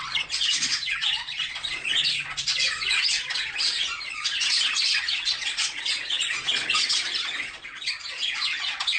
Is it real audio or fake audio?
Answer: fake